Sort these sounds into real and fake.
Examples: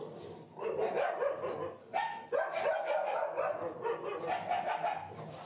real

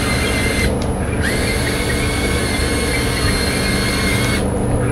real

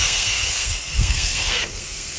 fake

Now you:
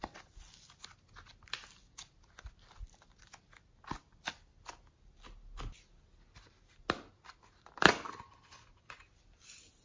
real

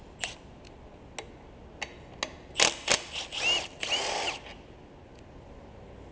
real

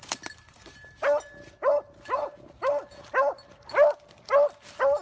real